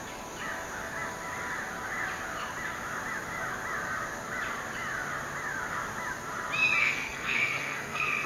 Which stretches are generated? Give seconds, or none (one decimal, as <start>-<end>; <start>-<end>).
6.8-8.3